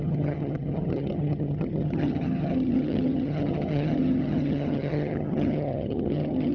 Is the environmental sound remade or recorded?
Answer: remade